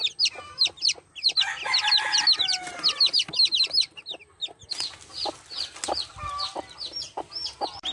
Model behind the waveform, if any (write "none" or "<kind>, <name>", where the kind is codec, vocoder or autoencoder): none